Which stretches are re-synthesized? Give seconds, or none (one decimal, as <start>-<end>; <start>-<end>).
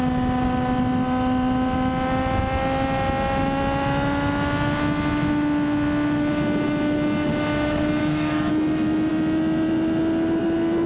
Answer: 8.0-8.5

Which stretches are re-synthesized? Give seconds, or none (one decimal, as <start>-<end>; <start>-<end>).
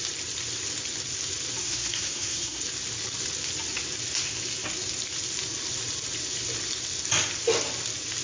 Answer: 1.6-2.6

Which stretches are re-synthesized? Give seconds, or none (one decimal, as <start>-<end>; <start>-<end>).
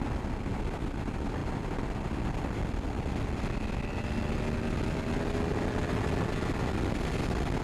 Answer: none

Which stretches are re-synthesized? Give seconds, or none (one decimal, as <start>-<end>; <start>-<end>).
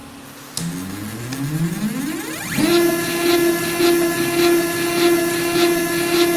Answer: none